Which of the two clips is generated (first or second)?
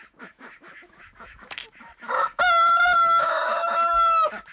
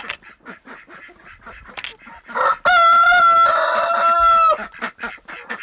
first